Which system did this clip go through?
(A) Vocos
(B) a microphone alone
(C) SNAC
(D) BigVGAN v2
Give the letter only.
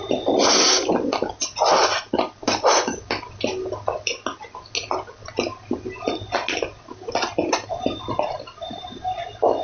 B